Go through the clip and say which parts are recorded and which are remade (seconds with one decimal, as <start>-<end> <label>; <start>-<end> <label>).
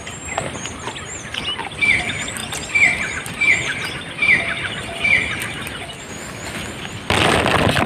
0.0-7.9 recorded